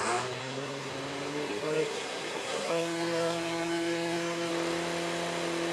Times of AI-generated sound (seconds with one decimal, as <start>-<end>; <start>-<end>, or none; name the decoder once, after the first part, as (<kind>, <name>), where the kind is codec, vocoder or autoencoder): 0.4-0.9 (codec, SNAC); 1.3-4.5